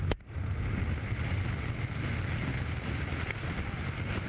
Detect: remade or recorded recorded